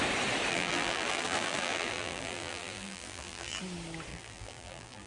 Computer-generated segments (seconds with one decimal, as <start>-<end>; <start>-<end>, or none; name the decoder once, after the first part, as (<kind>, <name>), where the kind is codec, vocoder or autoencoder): 0.5-3.6 (vocoder, BigVGAN v2); 4.1-5.1